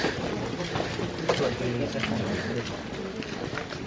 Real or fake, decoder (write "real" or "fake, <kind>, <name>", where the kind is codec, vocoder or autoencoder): real